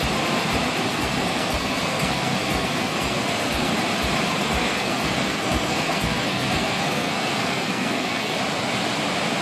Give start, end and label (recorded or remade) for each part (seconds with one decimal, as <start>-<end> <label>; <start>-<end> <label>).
0.0-0.9 recorded; 0.9-3.7 remade; 3.7-4.4 recorded; 4.4-8.4 remade; 8.4-9.4 recorded